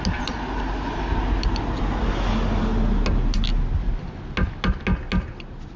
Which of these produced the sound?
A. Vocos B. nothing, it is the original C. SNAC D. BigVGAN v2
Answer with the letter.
B